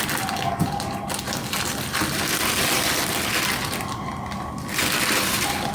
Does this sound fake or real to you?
real